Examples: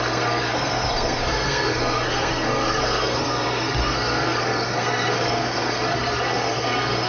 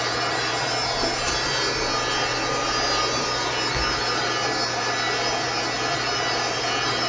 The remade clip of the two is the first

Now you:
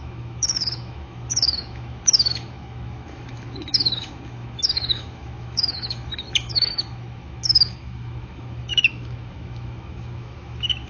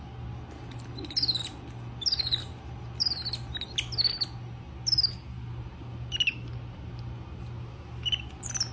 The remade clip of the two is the first